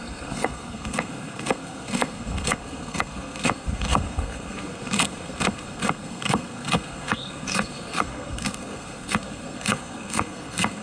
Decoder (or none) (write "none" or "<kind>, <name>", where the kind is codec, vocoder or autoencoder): codec, SNAC